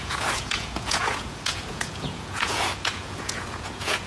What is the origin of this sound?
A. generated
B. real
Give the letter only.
A